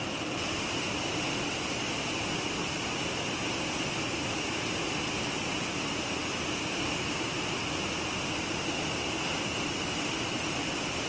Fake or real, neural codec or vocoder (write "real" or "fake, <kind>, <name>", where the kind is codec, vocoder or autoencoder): real